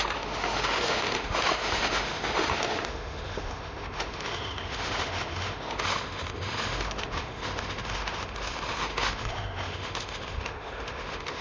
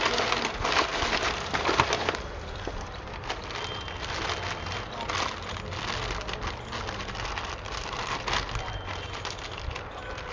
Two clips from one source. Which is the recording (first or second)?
second